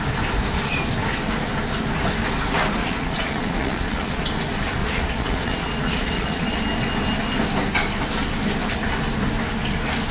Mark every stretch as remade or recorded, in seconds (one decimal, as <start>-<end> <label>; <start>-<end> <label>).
0.0-2.8 recorded; 2.8-4.2 remade; 4.2-4.8 recorded; 4.8-6.6 remade; 6.6-10.1 recorded